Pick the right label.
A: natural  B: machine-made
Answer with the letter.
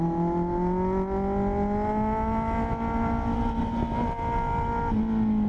A